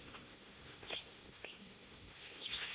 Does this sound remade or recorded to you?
remade